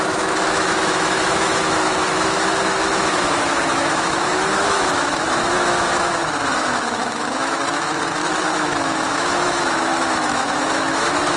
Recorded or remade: remade